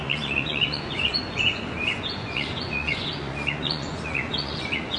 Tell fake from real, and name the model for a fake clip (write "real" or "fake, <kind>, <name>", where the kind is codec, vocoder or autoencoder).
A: fake, vocoder, Vocos